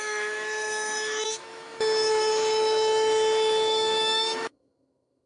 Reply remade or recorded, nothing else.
remade